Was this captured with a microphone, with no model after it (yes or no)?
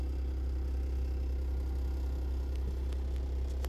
yes